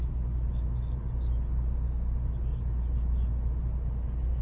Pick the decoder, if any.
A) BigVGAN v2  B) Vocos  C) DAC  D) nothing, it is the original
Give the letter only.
D